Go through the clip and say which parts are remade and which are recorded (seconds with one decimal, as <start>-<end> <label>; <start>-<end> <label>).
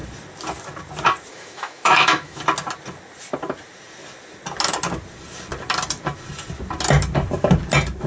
0.0-1.3 recorded; 1.3-2.4 remade; 2.4-8.1 recorded